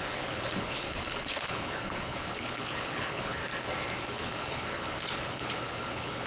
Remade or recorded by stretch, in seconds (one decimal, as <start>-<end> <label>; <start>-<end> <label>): 0.0-3.4 remade; 3.4-4.1 recorded; 4.1-6.3 remade